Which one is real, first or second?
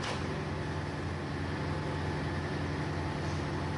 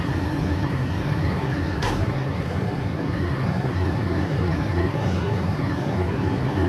first